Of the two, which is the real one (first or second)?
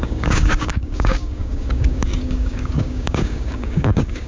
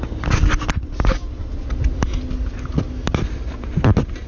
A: second